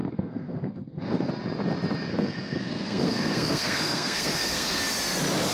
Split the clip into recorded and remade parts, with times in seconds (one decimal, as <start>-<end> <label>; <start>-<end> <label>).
0.0-1.3 remade; 1.3-2.1 recorded; 2.1-4.8 remade; 4.8-5.5 recorded